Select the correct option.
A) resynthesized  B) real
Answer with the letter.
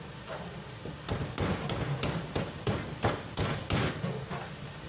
B